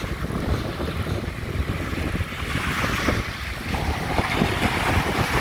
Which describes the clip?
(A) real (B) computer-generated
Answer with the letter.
A